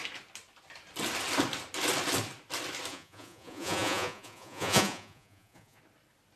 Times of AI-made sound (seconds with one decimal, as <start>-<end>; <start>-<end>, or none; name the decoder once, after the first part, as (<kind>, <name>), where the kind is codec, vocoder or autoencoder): 2.9-5.8 (vocoder, Vocos)